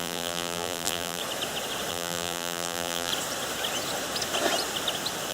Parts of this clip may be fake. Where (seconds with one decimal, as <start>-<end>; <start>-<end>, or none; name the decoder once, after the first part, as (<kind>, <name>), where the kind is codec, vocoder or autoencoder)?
0.0-1.2 (vocoder, BigVGAN v2); 1.9-3.1